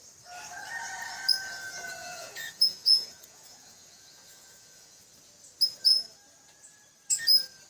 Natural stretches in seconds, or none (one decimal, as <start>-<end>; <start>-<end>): 0.0-2.0; 5.0-7.7